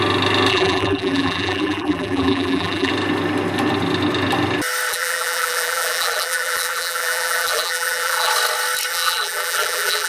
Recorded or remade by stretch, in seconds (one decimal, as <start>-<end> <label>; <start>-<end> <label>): 0.0-0.5 recorded; 0.5-2.9 remade; 2.9-4.9 recorded; 4.9-8.3 remade; 8.3-8.9 recorded; 8.9-10.1 remade